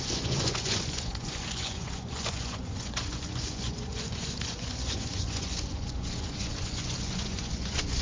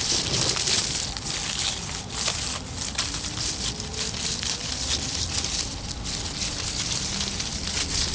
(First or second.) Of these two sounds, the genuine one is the second